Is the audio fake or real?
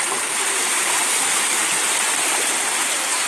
real